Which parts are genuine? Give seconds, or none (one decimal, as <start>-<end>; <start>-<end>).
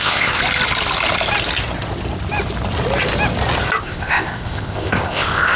0.4-3.8